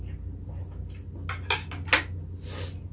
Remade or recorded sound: recorded